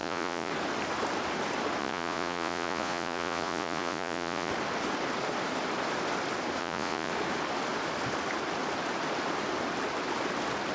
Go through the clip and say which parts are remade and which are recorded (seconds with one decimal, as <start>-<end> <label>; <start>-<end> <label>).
0.0-0.5 remade; 0.5-1.8 recorded; 1.8-4.5 remade; 4.5-6.6 recorded; 6.6-7.1 remade; 7.1-10.7 recorded